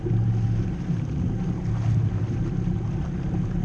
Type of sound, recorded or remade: recorded